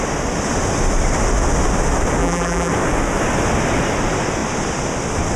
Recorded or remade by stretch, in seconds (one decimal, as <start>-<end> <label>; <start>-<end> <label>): 0.0-2.2 recorded; 2.2-2.7 remade; 2.7-5.4 recorded

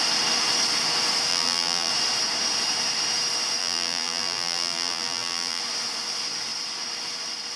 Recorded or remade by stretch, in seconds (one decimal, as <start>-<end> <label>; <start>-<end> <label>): 0.0-1.3 recorded; 1.3-1.9 remade; 1.9-3.6 recorded; 3.6-5.6 remade; 5.6-7.6 recorded

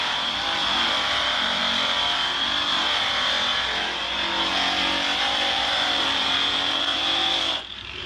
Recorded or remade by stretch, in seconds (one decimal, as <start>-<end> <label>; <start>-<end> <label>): 0.0-1.6 remade; 1.6-2.8 recorded; 2.8-3.5 remade; 3.5-5.2 recorded; 5.2-8.1 remade

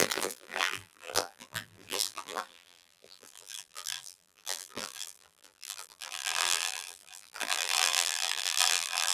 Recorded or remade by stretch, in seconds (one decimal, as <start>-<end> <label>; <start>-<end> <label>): 0.0-9.1 remade

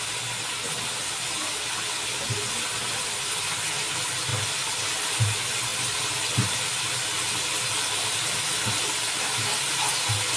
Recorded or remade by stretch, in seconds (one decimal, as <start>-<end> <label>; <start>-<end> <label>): 0.0-10.4 recorded